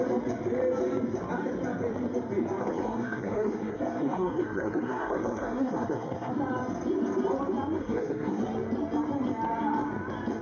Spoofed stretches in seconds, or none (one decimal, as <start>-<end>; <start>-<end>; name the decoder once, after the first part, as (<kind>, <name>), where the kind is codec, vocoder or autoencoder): 2.6-6.3 (codec, SNAC); 7.8-8.4